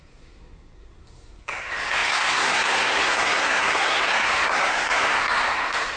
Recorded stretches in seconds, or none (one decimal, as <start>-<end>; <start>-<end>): none